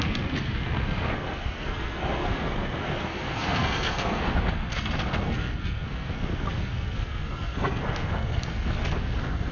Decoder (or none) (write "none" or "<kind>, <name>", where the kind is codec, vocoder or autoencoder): codec, SNAC